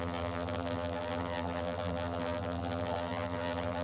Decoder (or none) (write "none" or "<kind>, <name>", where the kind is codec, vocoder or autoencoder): vocoder, BigVGAN v2